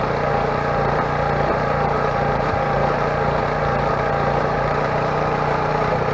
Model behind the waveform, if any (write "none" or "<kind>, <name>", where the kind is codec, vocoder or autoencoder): vocoder, BigVGAN v2